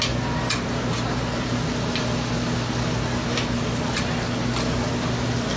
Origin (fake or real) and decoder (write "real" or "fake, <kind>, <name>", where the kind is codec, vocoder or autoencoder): real